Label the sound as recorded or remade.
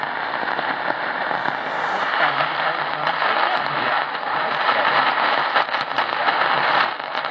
recorded